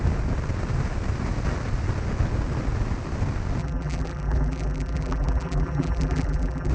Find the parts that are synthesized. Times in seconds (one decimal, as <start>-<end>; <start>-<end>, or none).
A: 3.6-6.7